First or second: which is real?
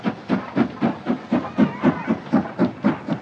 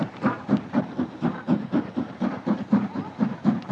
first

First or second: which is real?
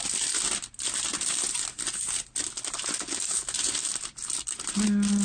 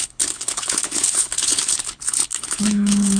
first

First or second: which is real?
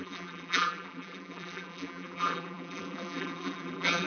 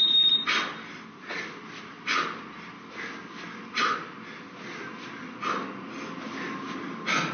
second